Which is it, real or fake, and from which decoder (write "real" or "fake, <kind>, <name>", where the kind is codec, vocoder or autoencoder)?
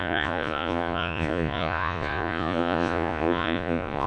fake, vocoder, Vocos